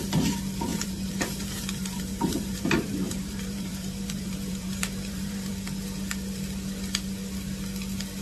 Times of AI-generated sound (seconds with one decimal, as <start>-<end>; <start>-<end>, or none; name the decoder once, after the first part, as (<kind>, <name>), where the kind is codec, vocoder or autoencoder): 0.7-5.5 (vocoder, BigVGAN v2)